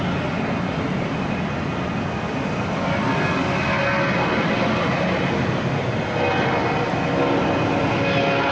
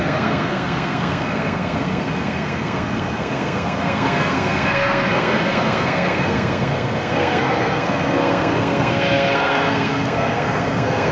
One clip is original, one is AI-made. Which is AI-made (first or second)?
second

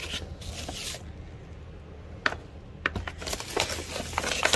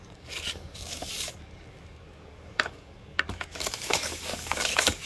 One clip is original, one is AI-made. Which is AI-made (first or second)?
second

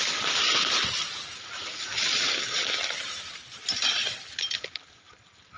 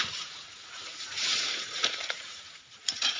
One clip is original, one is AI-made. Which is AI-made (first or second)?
second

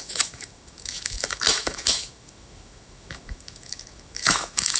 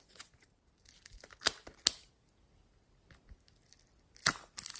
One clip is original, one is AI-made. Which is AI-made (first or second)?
first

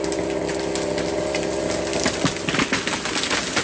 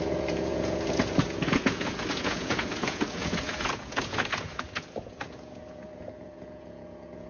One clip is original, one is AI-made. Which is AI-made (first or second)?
second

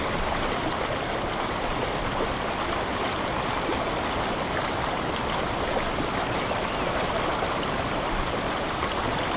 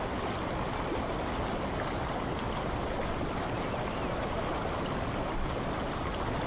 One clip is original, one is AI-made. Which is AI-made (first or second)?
first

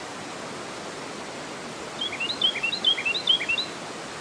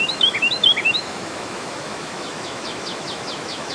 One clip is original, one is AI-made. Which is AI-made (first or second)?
second